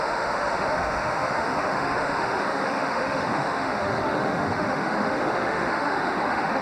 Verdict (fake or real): fake